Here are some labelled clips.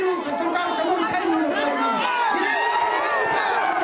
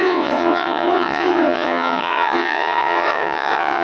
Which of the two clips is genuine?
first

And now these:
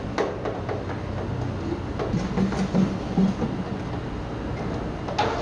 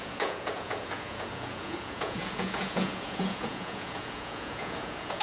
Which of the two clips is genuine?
first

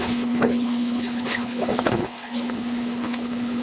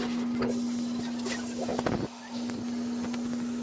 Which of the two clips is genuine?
second